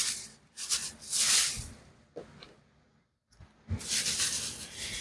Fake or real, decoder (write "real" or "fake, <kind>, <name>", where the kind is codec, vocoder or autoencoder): real